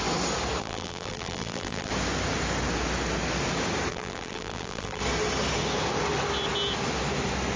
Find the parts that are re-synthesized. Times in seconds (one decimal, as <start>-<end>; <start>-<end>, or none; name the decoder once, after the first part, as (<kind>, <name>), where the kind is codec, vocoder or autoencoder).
0.6-1.9 (vocoder, BigVGAN v2); 3.9-5.0